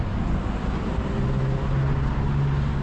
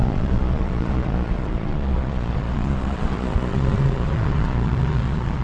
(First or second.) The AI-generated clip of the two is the second